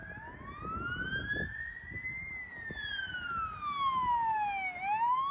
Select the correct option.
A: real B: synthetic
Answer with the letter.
A